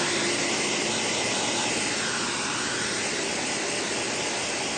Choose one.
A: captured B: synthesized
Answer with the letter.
A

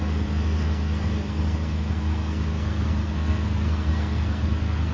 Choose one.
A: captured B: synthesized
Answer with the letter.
B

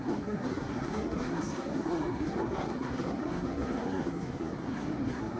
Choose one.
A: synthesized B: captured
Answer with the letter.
A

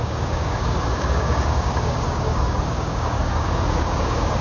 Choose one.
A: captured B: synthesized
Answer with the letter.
B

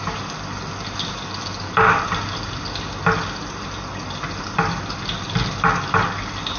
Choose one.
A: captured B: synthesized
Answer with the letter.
A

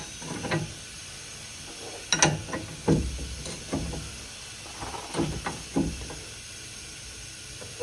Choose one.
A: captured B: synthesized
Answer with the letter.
A